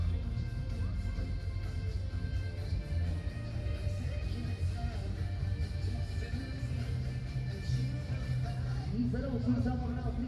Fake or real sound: real